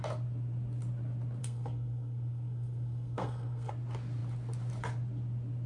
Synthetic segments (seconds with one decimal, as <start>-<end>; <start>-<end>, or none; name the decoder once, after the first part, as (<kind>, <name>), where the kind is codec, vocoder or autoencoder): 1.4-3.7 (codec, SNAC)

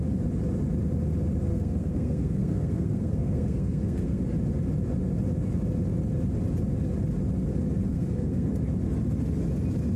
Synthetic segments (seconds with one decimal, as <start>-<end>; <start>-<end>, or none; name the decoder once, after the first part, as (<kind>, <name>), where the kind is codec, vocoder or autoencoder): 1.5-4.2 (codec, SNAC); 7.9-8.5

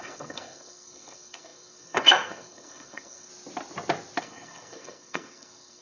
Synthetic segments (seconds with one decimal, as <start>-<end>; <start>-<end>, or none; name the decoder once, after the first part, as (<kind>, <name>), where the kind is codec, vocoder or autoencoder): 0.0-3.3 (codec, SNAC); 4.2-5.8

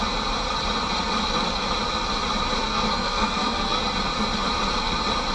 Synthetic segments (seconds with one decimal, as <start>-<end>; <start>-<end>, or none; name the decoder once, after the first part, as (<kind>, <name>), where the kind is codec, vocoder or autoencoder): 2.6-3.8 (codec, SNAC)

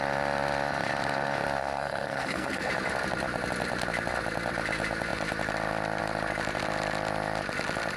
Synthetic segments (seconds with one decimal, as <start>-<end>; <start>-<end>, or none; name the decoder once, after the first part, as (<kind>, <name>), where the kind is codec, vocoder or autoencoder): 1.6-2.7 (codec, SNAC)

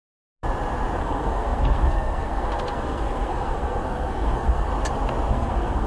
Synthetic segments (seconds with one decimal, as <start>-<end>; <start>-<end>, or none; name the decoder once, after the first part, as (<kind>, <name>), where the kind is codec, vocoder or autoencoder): 1.0-4.7 (codec, SNAC); 5.3-5.9

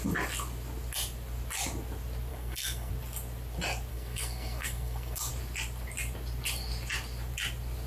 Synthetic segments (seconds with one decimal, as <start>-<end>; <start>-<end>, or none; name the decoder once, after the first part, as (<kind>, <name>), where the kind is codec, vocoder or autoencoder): 2.3-2.9 (codec, SNAC); 3.9-5.3

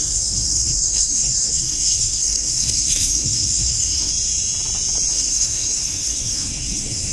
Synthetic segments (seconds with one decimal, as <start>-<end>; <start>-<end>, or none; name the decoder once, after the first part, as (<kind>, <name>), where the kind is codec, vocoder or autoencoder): 0.0-4.1 (codec, SNAC); 5.1-7.1